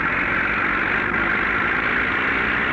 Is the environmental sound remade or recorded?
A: recorded